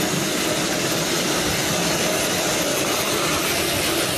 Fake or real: real